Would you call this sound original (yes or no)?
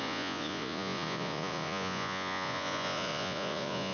no